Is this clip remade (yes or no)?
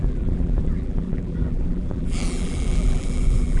yes